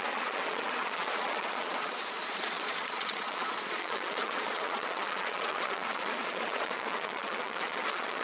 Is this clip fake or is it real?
fake